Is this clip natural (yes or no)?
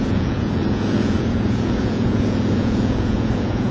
no